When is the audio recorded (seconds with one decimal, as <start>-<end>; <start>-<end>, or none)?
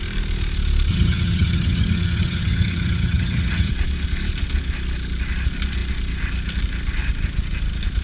0.0-0.9; 3.7-8.0